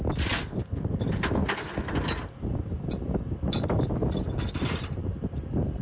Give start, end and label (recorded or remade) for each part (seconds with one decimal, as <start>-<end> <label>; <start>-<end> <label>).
0.0-1.4 remade; 1.4-2.2 recorded; 2.2-5.8 remade